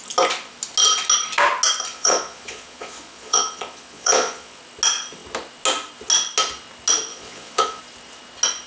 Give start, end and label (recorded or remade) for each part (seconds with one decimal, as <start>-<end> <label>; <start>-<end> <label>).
0.0-1.9 recorded; 1.9-4.6 remade; 4.6-7.1 recorded; 7.1-7.8 remade; 7.8-8.7 recorded